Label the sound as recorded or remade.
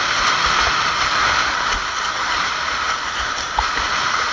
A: recorded